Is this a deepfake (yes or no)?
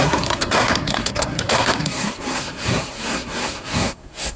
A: yes